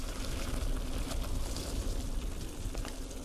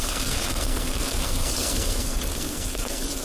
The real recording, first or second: first